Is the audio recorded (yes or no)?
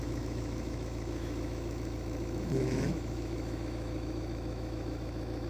no